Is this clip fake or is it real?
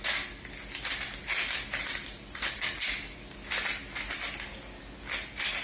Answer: real